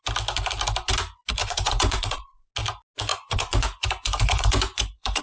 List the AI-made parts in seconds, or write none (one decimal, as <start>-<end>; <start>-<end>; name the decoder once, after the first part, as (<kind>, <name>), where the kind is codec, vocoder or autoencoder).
1.4-2.2 (vocoder, Vocos); 3.1-5.2